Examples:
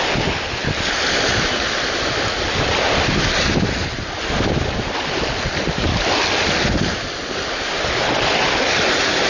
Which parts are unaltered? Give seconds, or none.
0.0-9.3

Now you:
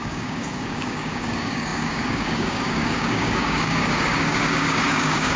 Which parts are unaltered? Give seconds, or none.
none